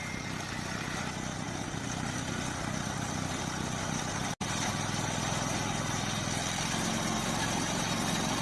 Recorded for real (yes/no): yes